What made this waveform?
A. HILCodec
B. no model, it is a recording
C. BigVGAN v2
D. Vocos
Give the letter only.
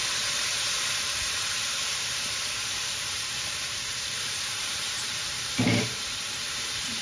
C